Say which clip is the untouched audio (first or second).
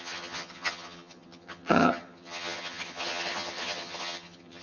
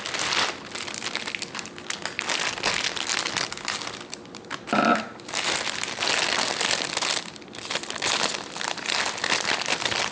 second